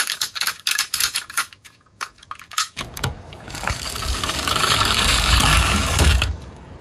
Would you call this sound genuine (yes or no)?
no